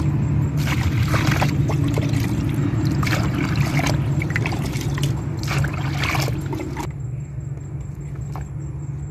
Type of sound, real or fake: real